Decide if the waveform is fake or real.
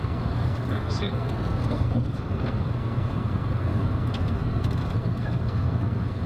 fake